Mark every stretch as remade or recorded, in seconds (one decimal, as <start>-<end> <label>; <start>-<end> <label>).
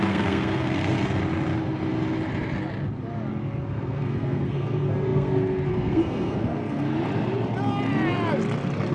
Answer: 0.0-1.2 remade; 1.2-3.7 recorded; 3.7-6.9 remade; 6.9-8.9 recorded